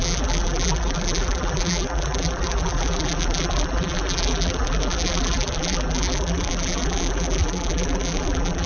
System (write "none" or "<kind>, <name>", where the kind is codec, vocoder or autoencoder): vocoder, BigVGAN v2